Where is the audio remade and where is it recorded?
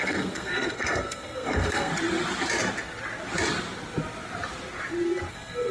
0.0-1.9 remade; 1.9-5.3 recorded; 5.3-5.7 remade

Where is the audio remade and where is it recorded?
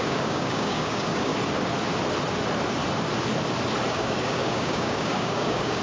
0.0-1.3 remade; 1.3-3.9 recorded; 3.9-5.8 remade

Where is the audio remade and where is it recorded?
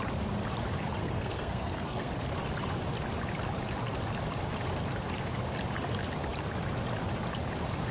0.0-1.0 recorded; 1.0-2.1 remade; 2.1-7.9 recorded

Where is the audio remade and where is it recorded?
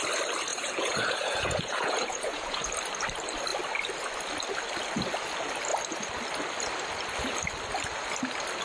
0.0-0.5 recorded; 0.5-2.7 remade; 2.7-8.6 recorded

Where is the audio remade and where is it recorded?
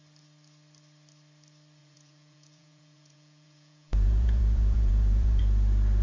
0.0-1.8 recorded; 1.8-5.4 remade; 5.4-6.0 recorded